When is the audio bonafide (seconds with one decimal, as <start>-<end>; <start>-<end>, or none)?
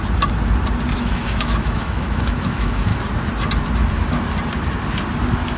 0.0-1.0; 2.9-5.6